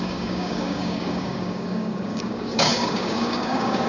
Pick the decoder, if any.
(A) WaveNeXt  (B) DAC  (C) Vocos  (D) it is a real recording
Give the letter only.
B